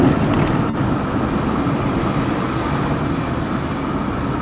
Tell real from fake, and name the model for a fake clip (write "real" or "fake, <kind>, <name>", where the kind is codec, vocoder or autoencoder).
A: fake, vocoder, BigVGAN v2